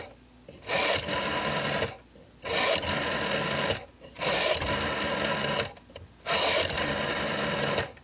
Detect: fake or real real